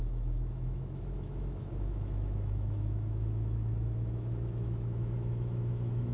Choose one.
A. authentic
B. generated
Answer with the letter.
B